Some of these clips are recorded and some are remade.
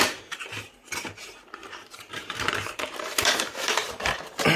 remade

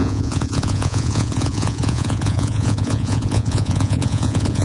remade